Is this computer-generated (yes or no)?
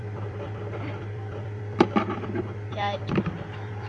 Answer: yes